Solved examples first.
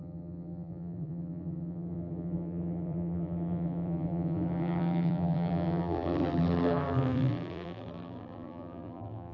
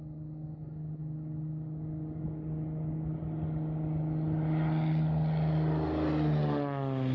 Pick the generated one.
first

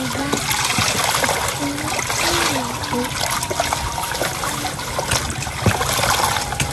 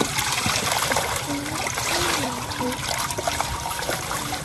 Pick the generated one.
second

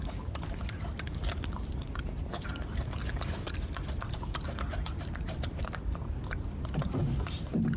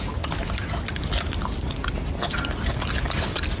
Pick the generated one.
first